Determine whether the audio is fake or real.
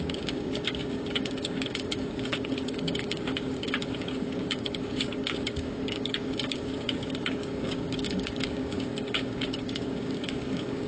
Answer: fake